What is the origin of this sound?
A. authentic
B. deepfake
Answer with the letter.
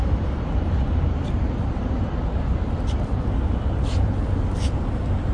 B